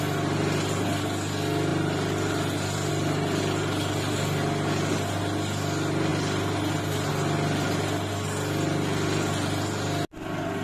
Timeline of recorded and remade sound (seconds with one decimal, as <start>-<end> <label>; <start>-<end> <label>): 0.0-10.6 recorded